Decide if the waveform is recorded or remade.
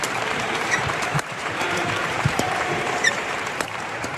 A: remade